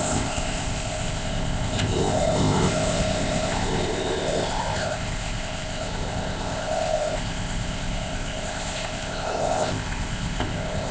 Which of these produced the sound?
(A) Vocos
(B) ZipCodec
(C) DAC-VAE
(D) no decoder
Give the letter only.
B